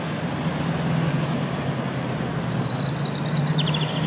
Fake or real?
real